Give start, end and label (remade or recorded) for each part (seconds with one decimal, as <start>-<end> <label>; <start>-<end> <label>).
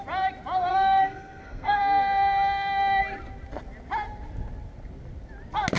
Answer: 0.0-0.7 recorded; 0.7-1.8 remade; 1.8-5.8 recorded